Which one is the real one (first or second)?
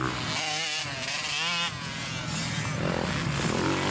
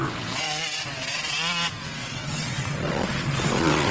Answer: first